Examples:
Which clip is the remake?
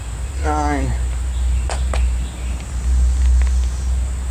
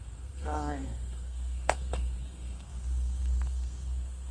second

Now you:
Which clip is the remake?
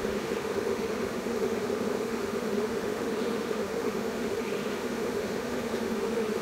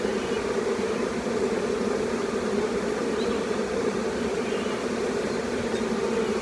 first